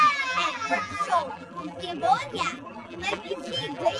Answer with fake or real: fake